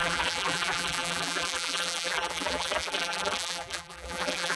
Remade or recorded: remade